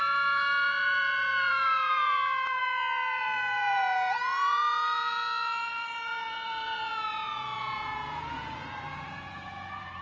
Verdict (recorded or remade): remade